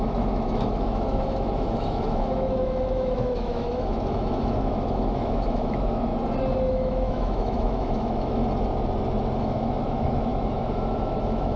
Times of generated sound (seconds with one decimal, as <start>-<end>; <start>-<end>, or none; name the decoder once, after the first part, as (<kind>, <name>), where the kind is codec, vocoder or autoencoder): 0.0-6.1 (autoencoder, DAC-VAE); 6.7-8.4; 9.4-11.6